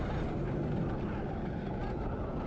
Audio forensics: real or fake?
real